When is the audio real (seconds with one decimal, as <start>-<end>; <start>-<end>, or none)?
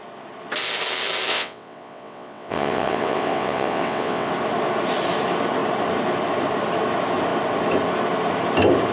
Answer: 0.0-1.3; 4.3-8.9